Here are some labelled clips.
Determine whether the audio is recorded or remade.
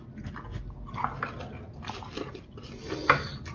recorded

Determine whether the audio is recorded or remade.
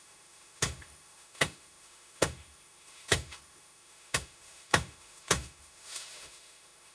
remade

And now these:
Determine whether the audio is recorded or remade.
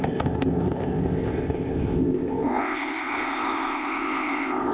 remade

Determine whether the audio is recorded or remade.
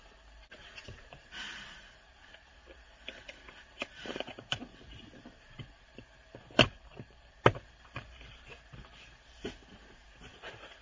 remade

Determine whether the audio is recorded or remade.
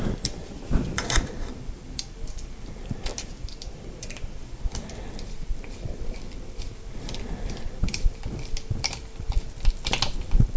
remade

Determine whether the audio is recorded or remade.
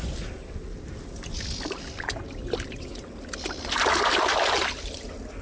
recorded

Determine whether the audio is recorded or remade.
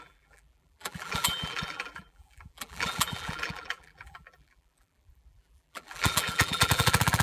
remade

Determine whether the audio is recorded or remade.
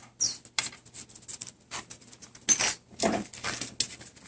recorded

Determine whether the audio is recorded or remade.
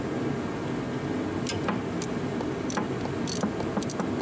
recorded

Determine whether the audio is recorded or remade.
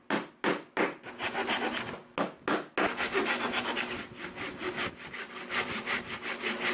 recorded